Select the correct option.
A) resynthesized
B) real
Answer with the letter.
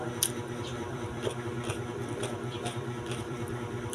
A